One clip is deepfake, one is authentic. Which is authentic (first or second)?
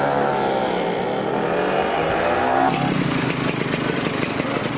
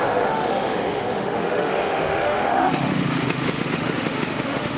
first